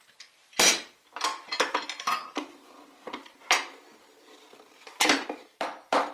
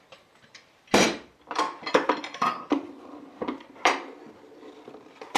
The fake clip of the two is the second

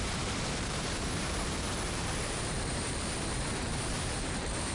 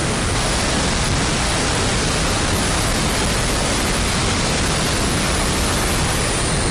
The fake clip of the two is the first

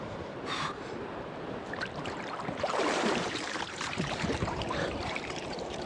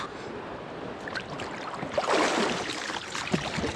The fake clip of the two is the first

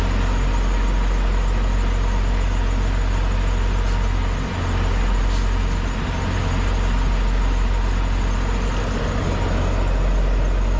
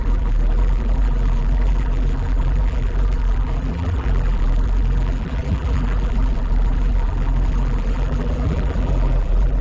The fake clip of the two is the second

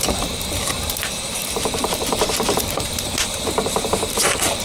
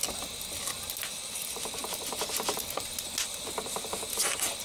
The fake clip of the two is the first